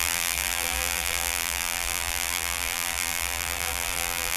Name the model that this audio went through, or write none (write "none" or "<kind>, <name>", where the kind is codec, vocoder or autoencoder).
vocoder, BigVGAN v2